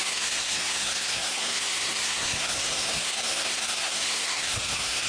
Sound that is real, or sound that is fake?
fake